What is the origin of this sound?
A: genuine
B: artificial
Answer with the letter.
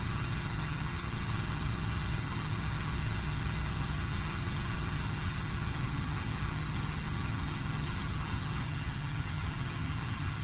B